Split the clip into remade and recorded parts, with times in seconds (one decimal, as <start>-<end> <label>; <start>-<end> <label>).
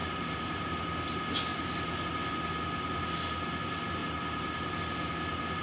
0.0-0.8 remade; 0.8-1.5 recorded; 1.5-2.1 remade; 2.1-4.0 recorded; 4.0-4.8 remade; 4.8-5.6 recorded